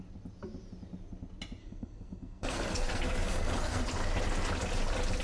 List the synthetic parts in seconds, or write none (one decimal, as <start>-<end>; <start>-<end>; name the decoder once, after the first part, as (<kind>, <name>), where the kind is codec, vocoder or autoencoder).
1.6-3.8 (codec, SNAC)